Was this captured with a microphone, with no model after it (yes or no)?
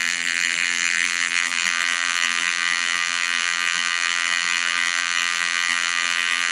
no